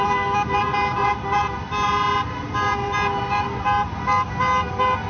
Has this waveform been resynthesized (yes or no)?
no